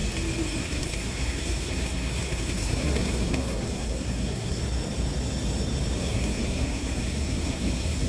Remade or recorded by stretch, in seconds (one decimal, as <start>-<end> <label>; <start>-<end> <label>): 0.0-0.6 recorded; 0.6-4.6 remade; 4.6-6.0 recorded; 6.0-8.1 remade